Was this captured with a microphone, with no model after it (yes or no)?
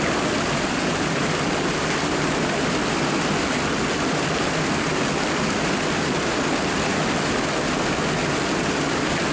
yes